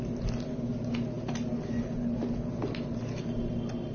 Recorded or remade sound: recorded